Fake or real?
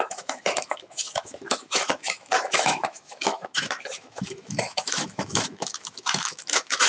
fake